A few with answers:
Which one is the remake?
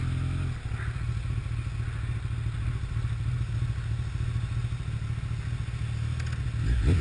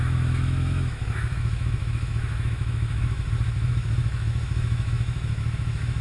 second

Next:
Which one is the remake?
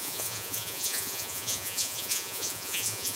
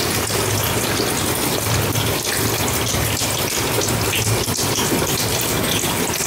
first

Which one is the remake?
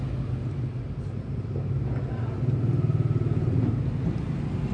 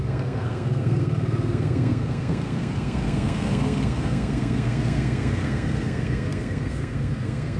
second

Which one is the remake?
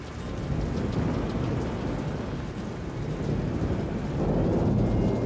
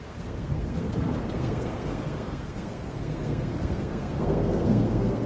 second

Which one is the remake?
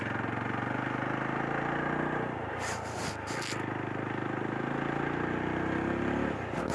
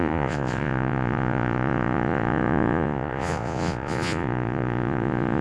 second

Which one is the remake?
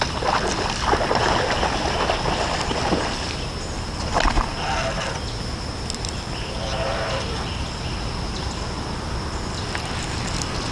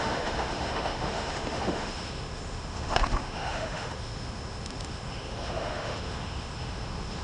second